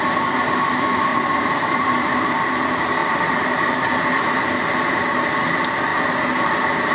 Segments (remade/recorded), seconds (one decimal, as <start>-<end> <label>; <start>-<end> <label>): 0.0-1.1 recorded; 1.1-2.5 remade; 2.5-3.0 recorded; 3.0-4.4 remade; 4.4-6.9 recorded